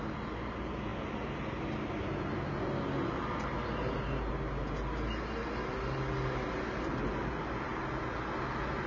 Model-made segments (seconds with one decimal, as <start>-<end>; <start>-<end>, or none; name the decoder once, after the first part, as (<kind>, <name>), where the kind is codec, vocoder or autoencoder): none